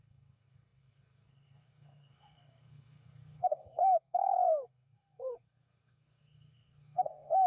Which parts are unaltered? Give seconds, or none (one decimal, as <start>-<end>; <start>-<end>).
none